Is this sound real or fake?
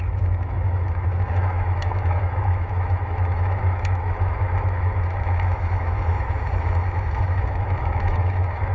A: fake